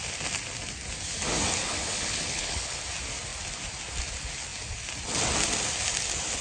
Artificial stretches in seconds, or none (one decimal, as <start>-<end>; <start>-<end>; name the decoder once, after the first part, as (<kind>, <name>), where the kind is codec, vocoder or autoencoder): 1.6-2.8 (codec, HILCodec)